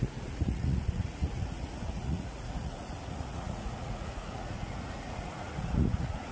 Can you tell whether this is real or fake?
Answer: fake